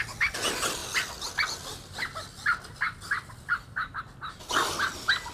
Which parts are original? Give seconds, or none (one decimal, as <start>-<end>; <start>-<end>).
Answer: 0.0-5.3